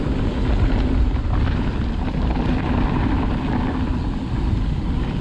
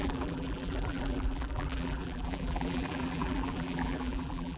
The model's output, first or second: second